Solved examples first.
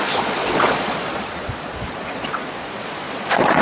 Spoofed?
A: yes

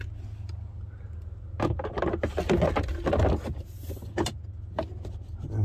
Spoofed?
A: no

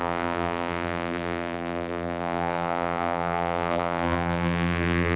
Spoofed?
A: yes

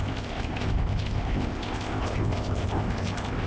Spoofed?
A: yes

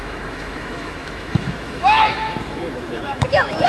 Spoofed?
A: yes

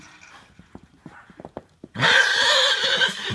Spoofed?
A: yes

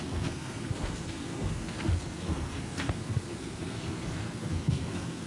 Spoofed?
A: yes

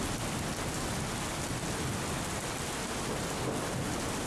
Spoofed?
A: no